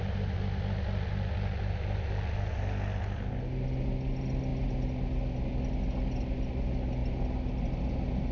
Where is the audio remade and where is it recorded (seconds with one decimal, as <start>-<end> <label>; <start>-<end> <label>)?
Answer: 0.0-8.3 recorded